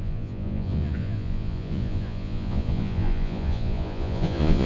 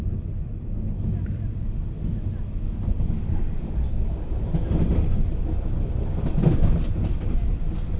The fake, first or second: first